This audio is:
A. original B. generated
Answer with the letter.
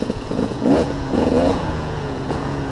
B